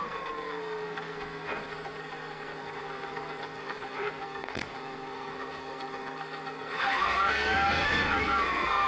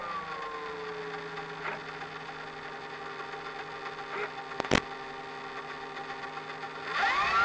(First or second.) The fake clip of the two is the first